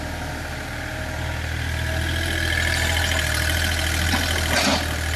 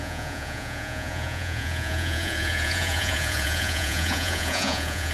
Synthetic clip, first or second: second